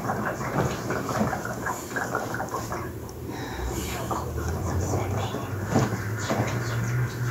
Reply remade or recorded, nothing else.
remade